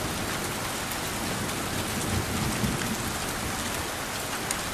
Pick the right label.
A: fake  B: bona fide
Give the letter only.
B